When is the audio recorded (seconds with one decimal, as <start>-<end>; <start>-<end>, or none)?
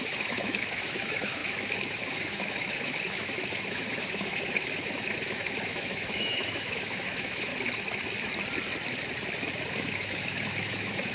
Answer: 7.5-9.7